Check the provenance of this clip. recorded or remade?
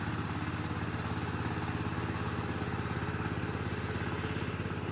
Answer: recorded